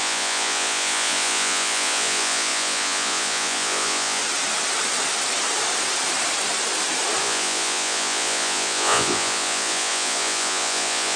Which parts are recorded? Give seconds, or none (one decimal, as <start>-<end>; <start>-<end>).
4.2-7.2